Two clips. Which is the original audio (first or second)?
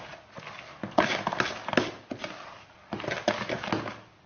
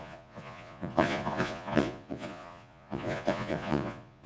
first